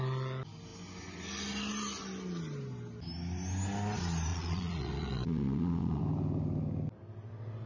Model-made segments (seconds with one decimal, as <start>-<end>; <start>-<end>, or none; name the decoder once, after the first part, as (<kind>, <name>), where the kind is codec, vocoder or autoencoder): 4.3-6.0 (vocoder, Vocos)